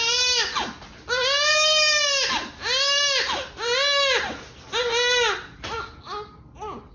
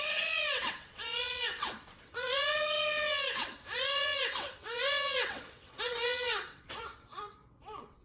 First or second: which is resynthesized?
second